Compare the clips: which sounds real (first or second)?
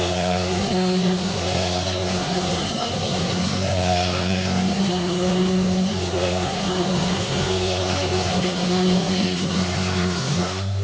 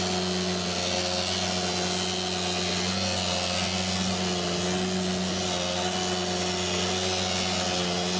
second